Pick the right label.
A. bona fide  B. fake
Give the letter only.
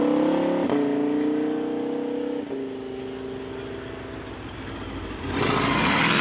A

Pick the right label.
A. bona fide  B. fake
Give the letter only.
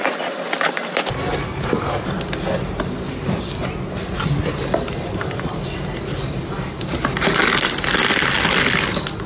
A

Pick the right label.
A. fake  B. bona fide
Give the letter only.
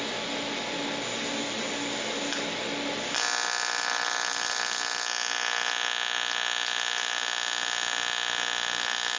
B